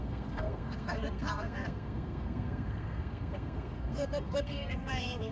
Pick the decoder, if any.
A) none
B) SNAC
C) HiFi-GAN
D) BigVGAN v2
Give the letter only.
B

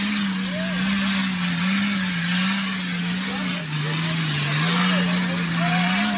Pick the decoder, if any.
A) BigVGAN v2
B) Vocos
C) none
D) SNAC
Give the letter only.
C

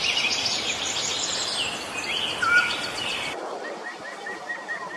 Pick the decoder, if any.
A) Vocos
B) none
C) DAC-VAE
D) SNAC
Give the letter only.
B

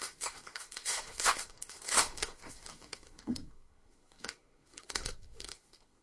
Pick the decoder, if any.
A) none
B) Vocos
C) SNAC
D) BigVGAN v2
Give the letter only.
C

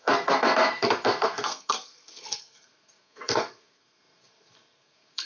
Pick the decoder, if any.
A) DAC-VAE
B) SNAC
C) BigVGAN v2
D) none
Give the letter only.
B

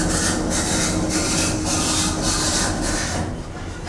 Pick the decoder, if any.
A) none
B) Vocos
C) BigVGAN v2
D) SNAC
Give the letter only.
A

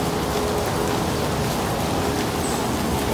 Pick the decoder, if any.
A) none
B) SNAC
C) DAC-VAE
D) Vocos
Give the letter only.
A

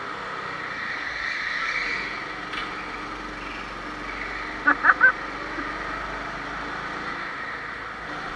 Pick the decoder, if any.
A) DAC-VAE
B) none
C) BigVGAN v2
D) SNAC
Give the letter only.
B